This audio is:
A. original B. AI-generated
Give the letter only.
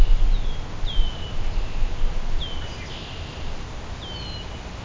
A